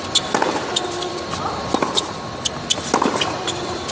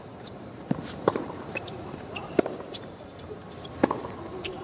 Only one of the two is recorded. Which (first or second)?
first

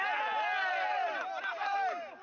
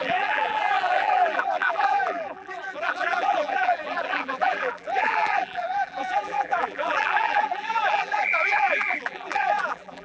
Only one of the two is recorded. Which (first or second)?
first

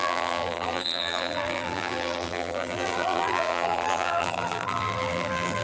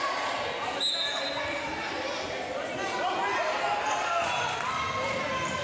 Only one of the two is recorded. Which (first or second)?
second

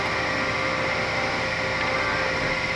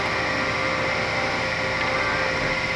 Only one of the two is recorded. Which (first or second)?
second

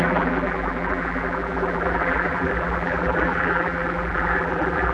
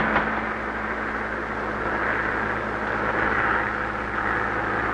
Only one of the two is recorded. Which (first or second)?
second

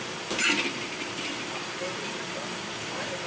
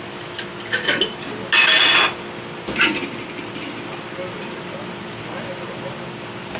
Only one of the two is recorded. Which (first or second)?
second